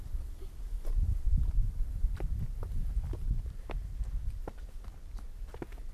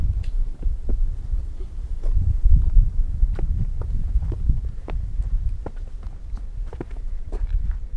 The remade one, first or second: second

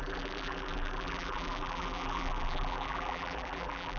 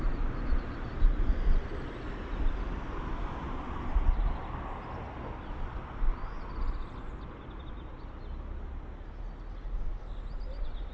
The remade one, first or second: first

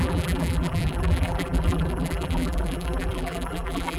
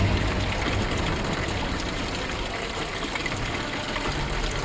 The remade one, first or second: first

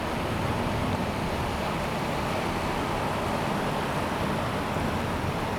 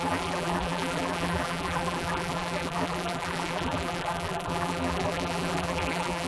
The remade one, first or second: second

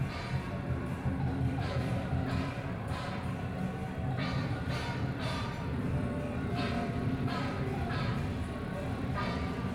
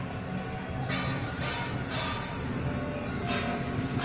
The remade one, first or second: first